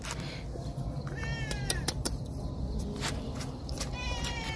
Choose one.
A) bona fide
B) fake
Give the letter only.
B